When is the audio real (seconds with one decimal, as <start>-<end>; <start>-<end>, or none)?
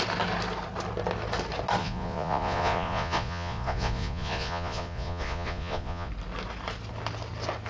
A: 0.0-1.8; 6.1-7.7